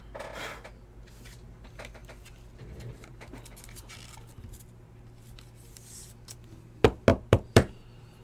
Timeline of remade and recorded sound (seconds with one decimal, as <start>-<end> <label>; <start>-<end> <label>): 0.0-7.1 recorded; 7.1-7.7 remade; 7.7-8.2 recorded